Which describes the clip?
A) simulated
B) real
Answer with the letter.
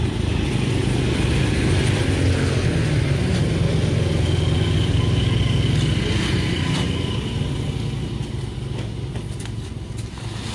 B